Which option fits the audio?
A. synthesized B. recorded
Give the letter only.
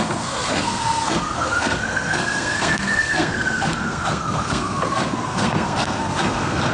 A